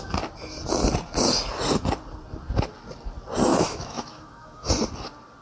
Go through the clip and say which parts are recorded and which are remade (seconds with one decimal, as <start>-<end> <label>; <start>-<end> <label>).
0.0-3.5 recorded; 3.5-4.7 remade; 4.7-5.4 recorded